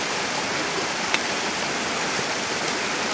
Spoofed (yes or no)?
no